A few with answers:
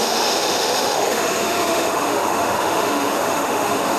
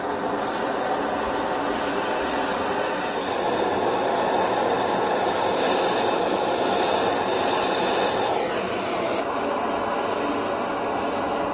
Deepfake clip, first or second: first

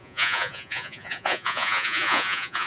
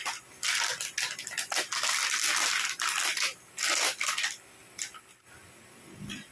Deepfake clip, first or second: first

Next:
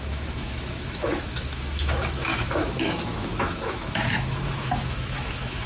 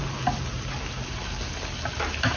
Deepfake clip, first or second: first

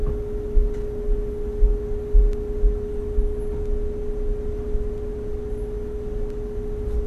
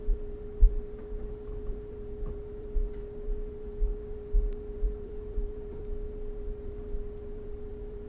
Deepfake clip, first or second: second